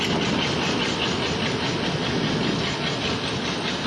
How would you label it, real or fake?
real